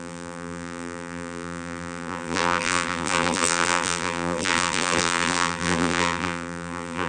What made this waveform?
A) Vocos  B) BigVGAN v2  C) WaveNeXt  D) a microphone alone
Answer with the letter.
B